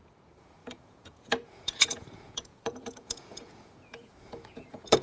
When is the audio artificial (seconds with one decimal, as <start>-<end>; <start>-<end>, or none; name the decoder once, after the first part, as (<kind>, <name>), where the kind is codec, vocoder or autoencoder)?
0.0-5.0 (vocoder, Vocos)

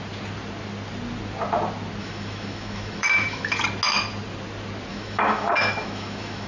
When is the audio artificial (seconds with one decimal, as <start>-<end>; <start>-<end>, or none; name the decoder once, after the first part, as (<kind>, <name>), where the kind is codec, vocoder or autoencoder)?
2.0-3.6 (autoencoder, DAC-VAE); 4.9-6.5

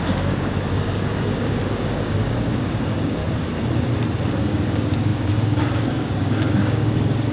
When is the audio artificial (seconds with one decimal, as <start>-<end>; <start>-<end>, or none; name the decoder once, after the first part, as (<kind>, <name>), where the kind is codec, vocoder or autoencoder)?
0.0-3.2 (codec, DAC); 4.4-7.3

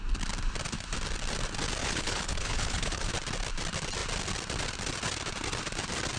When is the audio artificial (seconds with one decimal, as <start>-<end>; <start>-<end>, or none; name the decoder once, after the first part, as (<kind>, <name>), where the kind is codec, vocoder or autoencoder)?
1.8-3.1 (codec, HILCodec)

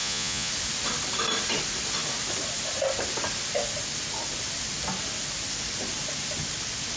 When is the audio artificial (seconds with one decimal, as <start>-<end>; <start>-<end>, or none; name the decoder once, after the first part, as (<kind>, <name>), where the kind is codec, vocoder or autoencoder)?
0.0-0.5 (vocoder, Vocos)

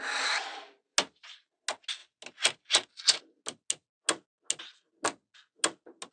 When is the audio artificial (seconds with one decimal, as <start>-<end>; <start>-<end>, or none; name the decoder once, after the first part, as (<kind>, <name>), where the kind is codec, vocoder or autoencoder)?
none